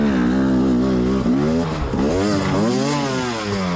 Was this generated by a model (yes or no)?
no